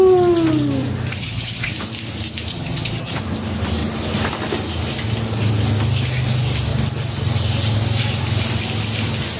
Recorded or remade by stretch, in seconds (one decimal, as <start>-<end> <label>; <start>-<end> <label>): 0.0-1.2 recorded; 1.2-1.7 remade; 1.7-2.5 recorded; 2.5-3.2 remade; 3.2-9.4 recorded